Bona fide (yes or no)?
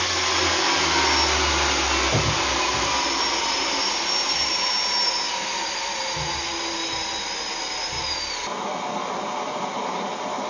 yes